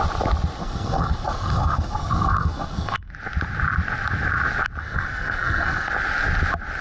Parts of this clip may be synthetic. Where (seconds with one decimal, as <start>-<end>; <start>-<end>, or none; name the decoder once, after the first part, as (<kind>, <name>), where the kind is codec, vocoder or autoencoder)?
0.6-3.1 (codec, SNAC); 4.8-5.9